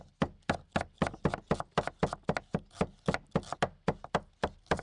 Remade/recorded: recorded